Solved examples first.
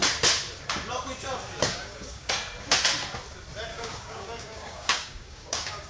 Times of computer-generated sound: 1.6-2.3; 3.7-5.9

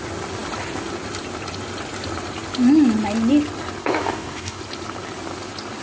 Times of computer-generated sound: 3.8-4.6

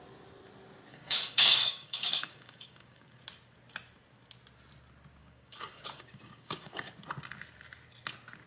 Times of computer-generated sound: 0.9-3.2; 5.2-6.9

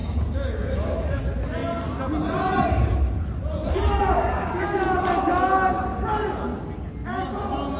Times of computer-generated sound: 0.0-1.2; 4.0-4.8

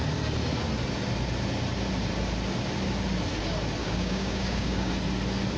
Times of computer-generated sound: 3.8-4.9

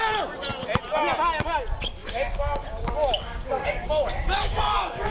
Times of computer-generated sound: 2.0-5.1